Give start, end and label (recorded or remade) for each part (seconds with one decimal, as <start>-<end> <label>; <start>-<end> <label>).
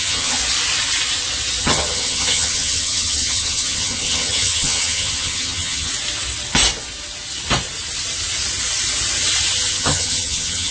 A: 0.0-0.4 remade; 0.4-1.6 recorded; 1.6-5.9 remade; 5.9-9.7 recorded; 9.7-10.7 remade